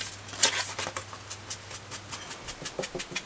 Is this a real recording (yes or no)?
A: yes